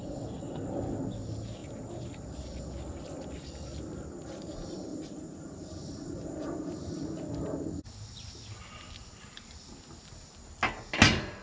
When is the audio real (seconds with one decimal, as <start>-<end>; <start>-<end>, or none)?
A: 0.0-4.9; 6.9-11.4